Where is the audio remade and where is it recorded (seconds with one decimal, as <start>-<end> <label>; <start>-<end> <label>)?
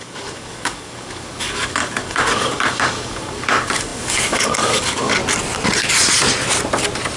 0.0-5.2 remade; 5.2-7.2 recorded